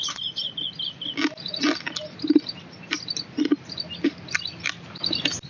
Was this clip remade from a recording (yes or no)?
no